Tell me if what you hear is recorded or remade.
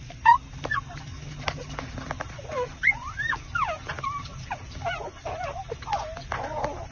recorded